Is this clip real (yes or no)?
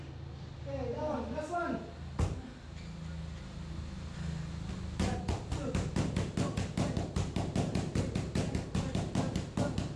yes